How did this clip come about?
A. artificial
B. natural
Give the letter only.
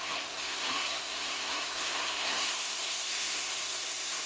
A